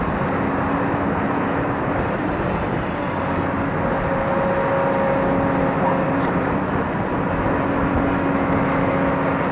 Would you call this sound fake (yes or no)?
no